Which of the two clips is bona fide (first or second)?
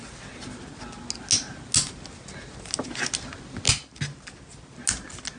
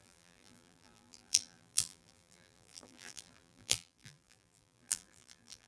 first